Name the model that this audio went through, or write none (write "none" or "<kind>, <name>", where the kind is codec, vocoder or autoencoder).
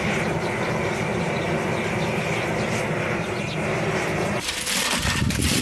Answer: none